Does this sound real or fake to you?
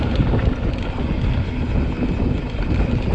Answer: real